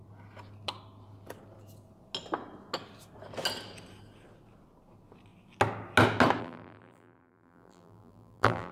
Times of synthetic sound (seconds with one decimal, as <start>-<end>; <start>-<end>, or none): 6.4-8.7